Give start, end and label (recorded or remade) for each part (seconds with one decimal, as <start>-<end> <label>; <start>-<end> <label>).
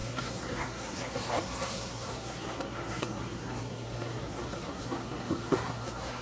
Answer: 0.0-6.2 remade